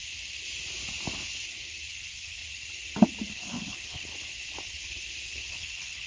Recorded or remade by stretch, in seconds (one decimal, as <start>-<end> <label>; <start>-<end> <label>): 0.0-1.9 recorded; 1.9-2.4 remade; 2.4-3.3 recorded; 3.3-4.1 remade; 4.1-5.5 recorded; 5.5-6.1 remade